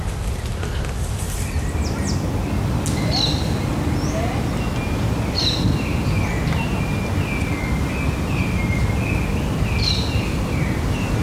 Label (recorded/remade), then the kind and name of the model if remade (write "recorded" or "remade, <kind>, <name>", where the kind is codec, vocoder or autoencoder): recorded